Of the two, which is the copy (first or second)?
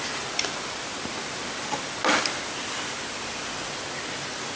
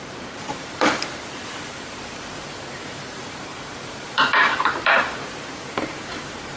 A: second